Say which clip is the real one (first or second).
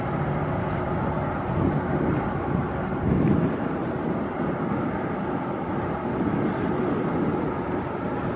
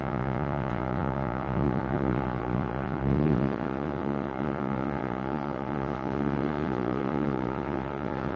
first